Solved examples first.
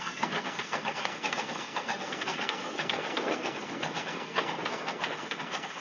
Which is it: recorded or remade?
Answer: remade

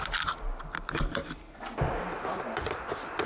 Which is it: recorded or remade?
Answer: recorded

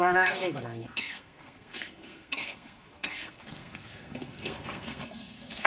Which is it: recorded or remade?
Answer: remade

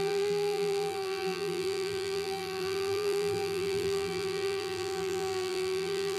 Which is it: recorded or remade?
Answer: remade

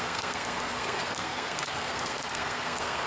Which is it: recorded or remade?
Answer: remade